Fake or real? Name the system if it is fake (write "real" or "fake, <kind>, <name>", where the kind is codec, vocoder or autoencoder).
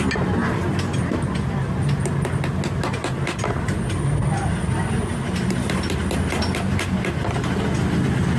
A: real